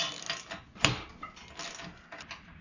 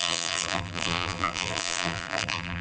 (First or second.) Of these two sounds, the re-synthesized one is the second